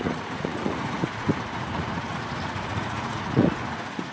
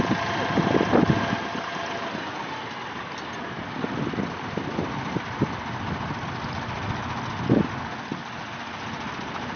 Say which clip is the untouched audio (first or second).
second